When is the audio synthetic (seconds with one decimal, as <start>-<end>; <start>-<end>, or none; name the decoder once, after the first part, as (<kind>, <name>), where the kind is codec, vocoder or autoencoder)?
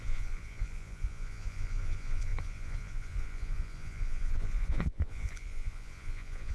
0.0-6.5 (vocoder, Vocos)